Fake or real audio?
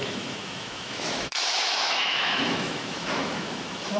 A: fake